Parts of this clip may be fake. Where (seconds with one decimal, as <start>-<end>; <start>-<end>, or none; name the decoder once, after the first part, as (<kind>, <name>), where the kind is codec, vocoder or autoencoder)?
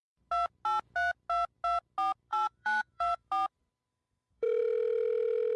2.3-3.3 (autoencoder, DAC-VAE); 3.9-4.6